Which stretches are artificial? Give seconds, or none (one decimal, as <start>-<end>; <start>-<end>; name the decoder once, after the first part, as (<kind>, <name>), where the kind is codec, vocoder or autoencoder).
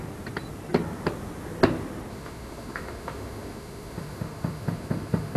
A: 2.1-5.4 (autoencoder, DAC-VAE)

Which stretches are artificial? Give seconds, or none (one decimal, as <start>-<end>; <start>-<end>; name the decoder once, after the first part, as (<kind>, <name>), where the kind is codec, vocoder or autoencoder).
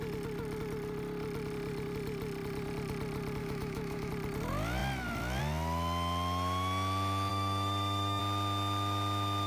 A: 3.4-4.1 (autoencoder, DAC-VAE); 7.3-8.2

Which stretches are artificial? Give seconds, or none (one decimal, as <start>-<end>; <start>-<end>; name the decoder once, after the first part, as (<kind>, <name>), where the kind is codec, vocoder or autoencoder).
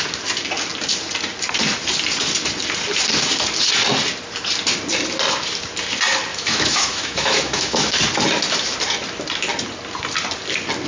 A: 6.3-8.0 (autoencoder, DAC-VAE)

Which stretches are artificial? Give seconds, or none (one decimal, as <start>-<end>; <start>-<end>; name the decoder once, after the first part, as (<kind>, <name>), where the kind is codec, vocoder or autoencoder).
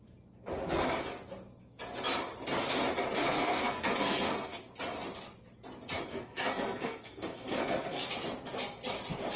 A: 3.2-4.6 (codec, SNAC); 6.1-8.1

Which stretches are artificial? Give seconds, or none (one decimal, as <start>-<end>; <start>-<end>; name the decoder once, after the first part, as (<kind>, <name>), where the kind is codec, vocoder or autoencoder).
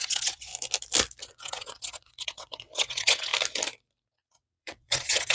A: 0.0-0.5 (vocoder, WaveNeXt); 1.2-3.3; 4.1-5.3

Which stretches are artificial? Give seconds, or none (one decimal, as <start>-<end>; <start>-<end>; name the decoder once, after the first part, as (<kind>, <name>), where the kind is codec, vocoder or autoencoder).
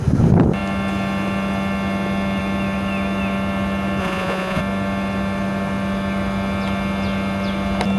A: 4.0-4.6 (vocoder, Vocos)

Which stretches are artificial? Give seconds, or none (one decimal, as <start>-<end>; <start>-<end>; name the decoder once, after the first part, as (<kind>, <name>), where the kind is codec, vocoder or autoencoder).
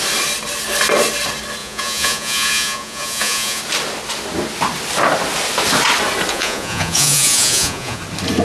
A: 1.6-3.6 (vocoder, Vocos); 6.3-8.0